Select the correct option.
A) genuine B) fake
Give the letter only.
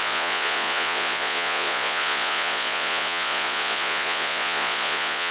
B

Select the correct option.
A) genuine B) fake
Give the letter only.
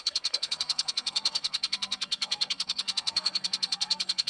B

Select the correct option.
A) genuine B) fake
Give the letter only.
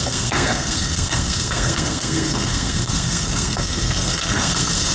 B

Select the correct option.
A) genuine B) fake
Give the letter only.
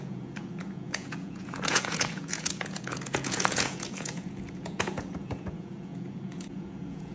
B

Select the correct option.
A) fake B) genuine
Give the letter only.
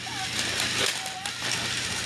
B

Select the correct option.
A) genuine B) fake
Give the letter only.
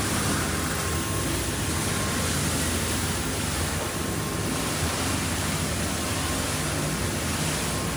A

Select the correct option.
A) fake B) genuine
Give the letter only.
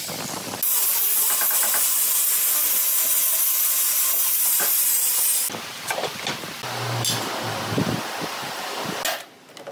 B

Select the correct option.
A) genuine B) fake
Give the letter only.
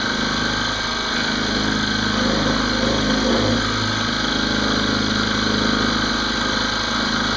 A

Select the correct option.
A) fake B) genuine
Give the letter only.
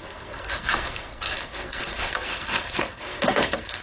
A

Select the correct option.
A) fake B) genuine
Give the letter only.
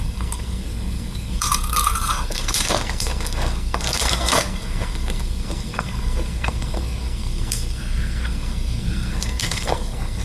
A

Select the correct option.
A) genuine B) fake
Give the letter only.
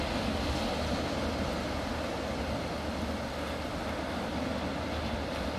A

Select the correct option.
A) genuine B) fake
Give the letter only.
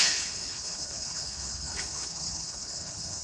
B